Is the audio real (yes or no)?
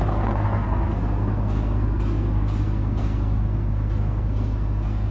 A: no